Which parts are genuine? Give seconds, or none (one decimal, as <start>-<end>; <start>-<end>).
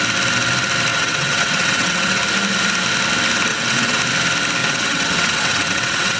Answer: 0.0-0.9; 2.2-3.5; 4.0-4.6